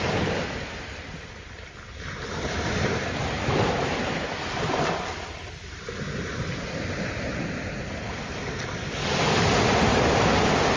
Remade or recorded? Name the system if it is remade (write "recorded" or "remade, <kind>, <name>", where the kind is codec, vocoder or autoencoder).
recorded